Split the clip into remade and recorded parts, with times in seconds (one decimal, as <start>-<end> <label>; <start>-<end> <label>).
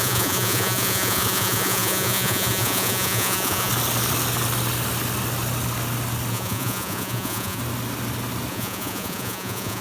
0.0-3.7 remade; 3.7-6.3 recorded; 6.3-7.6 remade; 7.6-8.5 recorded; 8.5-9.8 remade